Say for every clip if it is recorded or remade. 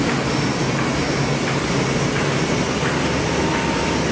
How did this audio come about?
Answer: recorded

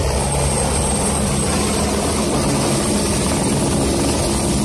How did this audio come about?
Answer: recorded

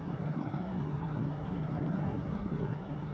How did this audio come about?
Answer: remade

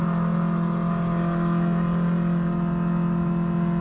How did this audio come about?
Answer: recorded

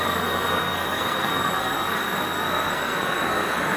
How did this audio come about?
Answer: remade